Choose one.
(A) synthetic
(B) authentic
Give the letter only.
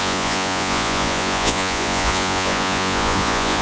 A